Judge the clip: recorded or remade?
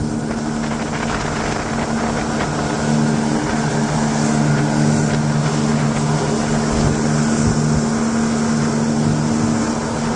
recorded